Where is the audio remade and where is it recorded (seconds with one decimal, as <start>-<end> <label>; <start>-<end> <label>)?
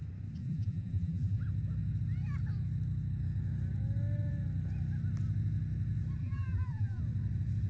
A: 0.0-0.4 recorded; 0.4-1.4 remade; 1.4-6.2 recorded; 6.2-7.0 remade; 7.0-7.7 recorded